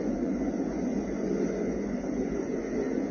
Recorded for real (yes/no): no